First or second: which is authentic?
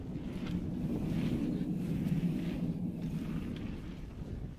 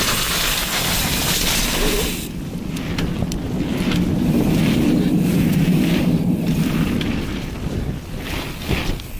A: first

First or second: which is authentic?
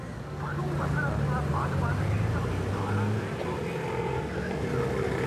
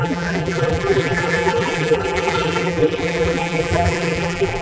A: first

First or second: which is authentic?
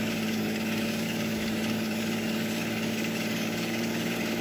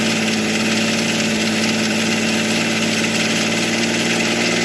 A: second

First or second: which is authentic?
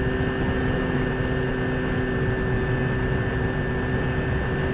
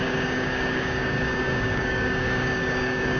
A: first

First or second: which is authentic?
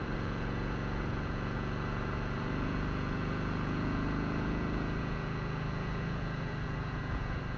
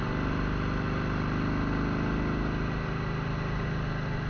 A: second